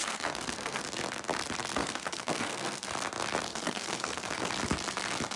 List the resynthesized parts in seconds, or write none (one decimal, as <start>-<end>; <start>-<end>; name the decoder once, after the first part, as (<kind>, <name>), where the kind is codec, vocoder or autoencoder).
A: 0.0-0.8 (codec, SNAC); 1.8-2.9; 3.5-4.5